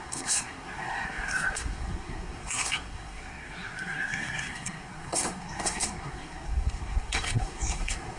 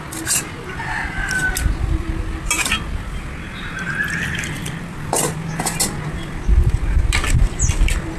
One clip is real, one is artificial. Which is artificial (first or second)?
first